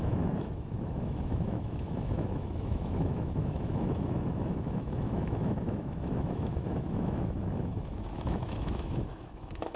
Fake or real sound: fake